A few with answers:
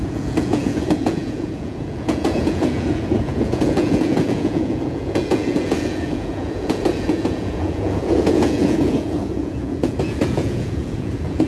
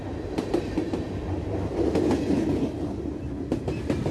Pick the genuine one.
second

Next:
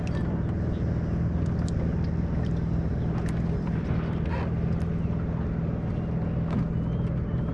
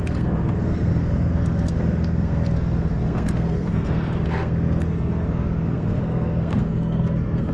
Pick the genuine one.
first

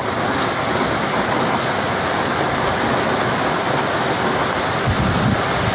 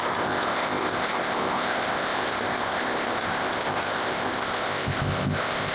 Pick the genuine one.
first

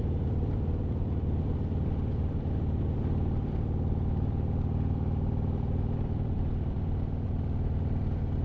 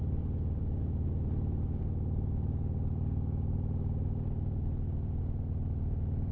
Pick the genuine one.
second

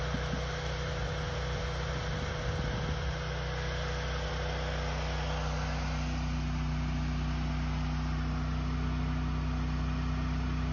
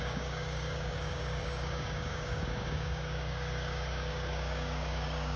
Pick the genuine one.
first